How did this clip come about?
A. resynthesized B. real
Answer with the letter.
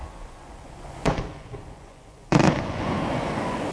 A